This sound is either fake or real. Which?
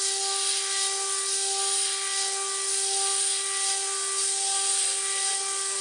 real